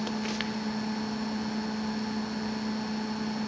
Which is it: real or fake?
real